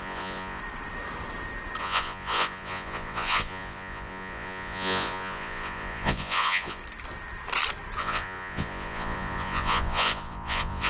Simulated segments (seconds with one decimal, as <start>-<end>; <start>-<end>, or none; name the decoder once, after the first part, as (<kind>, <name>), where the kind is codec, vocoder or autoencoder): 0.0-0.6 (vocoder, Vocos); 1.8-6.8; 8.0-10.9